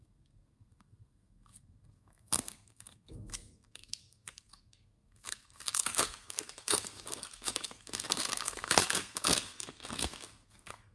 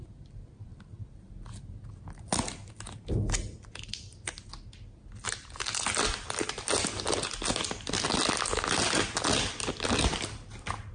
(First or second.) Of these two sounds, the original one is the second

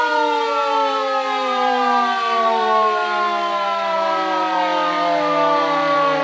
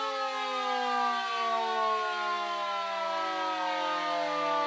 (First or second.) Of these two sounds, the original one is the second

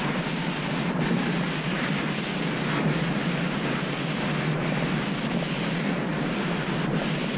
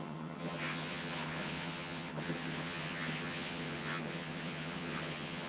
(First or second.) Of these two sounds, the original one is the first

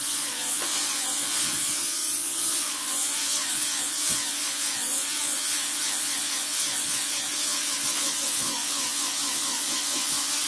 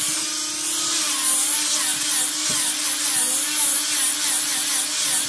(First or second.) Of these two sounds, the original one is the second